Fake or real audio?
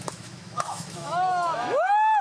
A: fake